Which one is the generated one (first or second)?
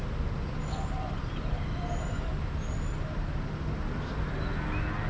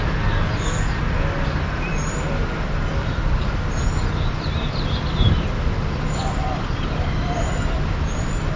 second